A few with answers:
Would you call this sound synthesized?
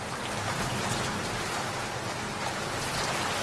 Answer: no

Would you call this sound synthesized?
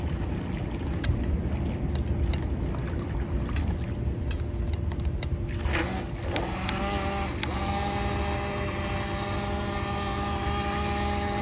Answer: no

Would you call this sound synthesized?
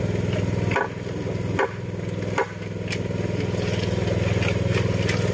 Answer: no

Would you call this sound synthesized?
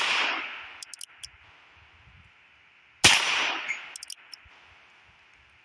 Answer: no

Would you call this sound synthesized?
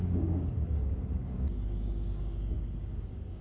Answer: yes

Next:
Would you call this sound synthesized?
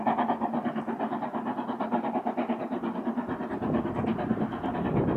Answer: no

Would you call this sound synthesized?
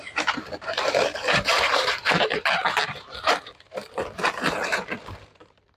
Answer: yes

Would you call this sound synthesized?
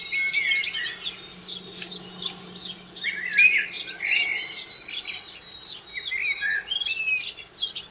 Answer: no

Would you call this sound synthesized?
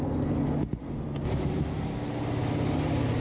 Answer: no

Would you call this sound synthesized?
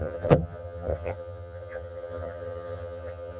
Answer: yes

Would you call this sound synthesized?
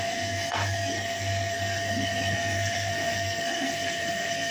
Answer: yes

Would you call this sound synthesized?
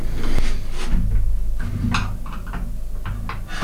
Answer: no